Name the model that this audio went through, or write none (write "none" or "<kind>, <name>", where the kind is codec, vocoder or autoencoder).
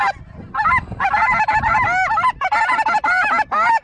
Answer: none